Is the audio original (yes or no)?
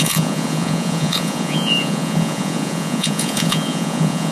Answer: no